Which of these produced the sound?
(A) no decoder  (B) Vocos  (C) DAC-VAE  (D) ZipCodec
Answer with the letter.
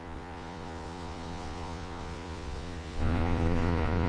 B